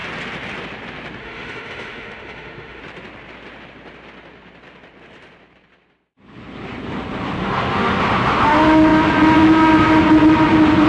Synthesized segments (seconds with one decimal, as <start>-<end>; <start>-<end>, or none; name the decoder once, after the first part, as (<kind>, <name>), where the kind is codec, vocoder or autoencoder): 1.2-2.8 (autoencoder, DAC-VAE); 7.4-8.0